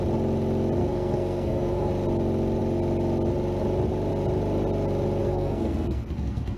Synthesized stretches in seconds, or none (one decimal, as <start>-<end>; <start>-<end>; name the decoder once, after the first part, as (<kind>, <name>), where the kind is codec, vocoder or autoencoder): 0.8-1.9 (codec, SNAC); 5.2-6.6